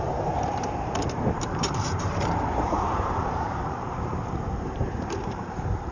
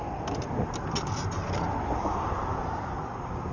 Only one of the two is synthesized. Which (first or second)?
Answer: first